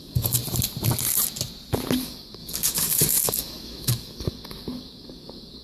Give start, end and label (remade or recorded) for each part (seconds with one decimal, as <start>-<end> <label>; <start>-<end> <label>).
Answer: 0.0-0.4 remade; 0.4-2.0 recorded; 2.0-5.6 remade